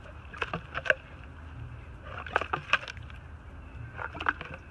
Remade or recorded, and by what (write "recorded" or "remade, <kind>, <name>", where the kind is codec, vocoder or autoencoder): recorded